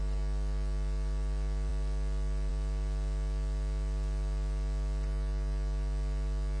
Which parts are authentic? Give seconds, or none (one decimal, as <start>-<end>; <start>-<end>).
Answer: 0.0-6.6